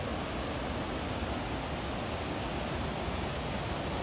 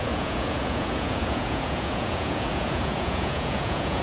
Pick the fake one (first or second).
second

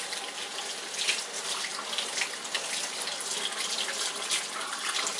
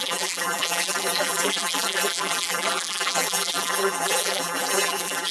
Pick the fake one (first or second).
second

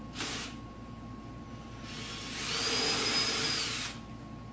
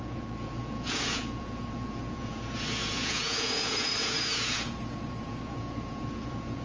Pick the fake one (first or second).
second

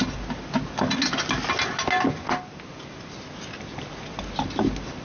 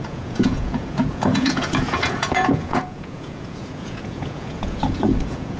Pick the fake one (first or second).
second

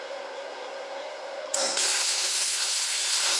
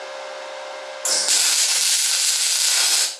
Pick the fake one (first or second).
first